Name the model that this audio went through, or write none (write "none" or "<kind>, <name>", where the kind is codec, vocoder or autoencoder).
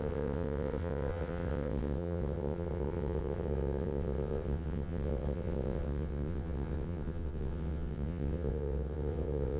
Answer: vocoder, WaveNeXt